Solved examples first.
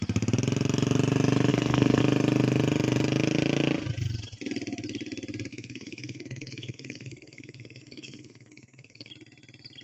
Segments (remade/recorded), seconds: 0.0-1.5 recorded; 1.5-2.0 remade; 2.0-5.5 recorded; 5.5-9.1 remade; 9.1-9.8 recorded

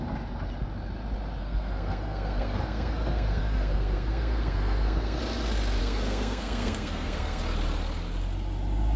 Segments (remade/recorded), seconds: 0.0-1.4 recorded; 1.4-5.2 remade; 5.2-5.8 recorded; 5.8-7.4 remade; 7.4-9.0 recorded

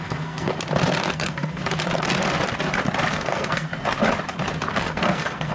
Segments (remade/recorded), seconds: 0.0-0.5 remade; 0.5-1.1 recorded; 1.1-1.6 remade; 1.6-3.1 recorded; 3.1-3.7 remade; 3.7-4.7 recorded; 4.7-5.5 remade

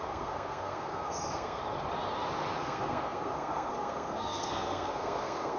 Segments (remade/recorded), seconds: 0.0-1.6 remade; 1.6-2.6 recorded; 2.6-5.6 remade

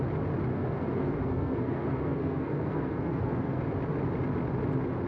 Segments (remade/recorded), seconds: 0.0-0.5 recorded; 0.5-3.6 remade; 3.6-5.1 recorded

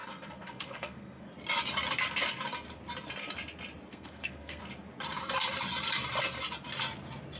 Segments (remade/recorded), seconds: 0.0-1.3 remade; 1.3-3.9 recorded; 3.9-4.6 remade; 4.6-7.4 recorded

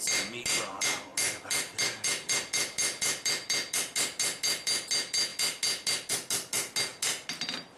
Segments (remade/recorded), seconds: 0.0-7.8 recorded

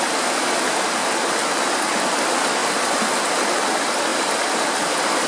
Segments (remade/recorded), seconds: 0.0-5.3 recorded